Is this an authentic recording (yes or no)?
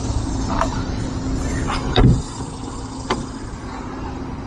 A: yes